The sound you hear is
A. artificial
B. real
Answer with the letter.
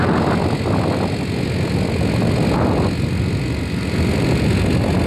B